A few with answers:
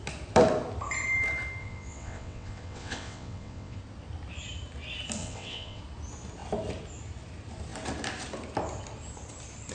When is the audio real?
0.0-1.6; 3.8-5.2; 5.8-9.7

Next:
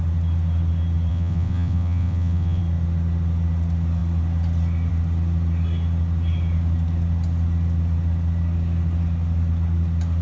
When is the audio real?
0.0-1.1; 2.6-10.2

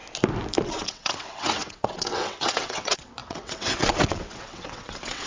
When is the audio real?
0.0-0.6

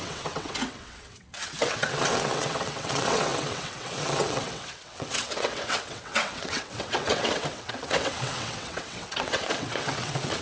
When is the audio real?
none

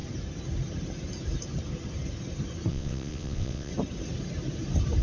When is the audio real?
0.0-2.7; 3.7-5.0

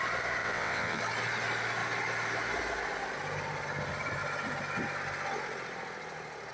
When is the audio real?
0.0-0.4; 1.0-6.5

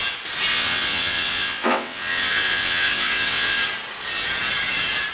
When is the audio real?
0.0-0.5; 3.6-5.1

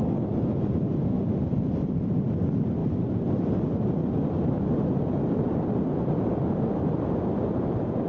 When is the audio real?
0.0-8.1